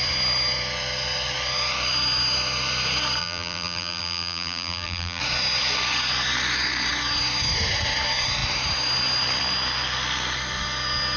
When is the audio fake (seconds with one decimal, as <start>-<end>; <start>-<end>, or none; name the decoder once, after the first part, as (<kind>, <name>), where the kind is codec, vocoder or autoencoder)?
3.2-5.2 (vocoder, BigVGAN v2)